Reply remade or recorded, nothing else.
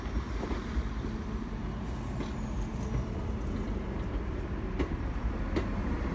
recorded